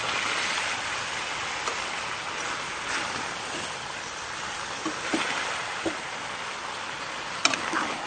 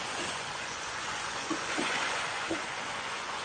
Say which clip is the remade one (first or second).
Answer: second